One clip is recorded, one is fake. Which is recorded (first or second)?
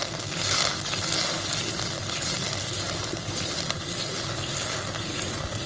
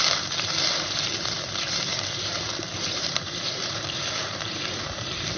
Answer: first